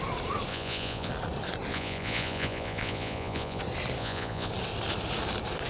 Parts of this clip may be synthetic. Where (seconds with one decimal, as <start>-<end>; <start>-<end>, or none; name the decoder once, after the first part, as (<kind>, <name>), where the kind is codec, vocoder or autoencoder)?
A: 0.5-1.1 (vocoder, Vocos); 1.7-3.6; 4.0-4.5